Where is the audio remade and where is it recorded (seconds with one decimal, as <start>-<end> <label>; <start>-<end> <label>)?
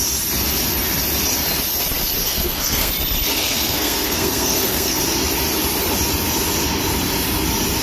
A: 0.0-2.2 recorded; 2.2-2.9 remade; 2.9-3.3 recorded; 3.3-5.0 remade; 5.0-7.8 recorded